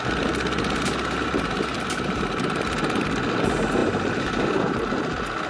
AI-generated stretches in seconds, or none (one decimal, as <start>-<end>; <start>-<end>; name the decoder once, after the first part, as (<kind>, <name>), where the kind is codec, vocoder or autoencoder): 1.7-2.2 (vocoder, BigVGAN v2); 3.8-4.8